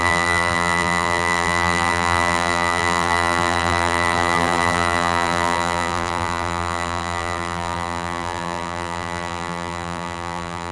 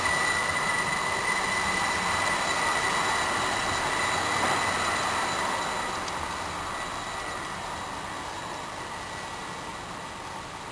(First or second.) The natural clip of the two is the second